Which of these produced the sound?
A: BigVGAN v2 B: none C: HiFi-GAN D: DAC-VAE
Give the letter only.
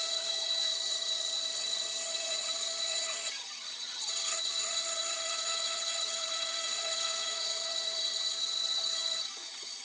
C